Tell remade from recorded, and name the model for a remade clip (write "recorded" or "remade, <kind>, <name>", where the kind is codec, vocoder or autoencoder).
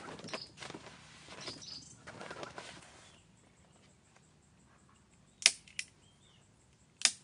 recorded